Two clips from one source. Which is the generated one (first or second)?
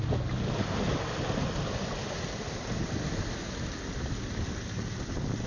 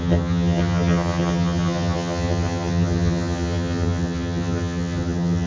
second